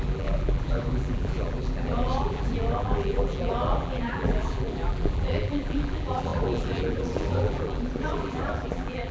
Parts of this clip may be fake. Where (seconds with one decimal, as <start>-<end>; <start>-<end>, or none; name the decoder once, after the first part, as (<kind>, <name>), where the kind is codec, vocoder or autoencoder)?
0.0-9.1 (vocoder, BigVGAN v2)